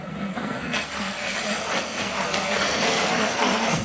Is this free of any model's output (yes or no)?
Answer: no